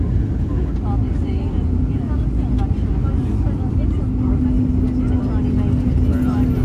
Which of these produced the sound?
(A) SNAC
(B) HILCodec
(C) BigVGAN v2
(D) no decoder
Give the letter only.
D